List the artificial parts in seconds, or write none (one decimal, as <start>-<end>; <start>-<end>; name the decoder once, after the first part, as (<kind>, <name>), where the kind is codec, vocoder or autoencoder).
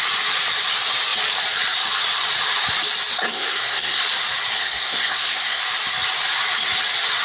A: 3.3-4.0 (codec, SNAC); 4.6-5.6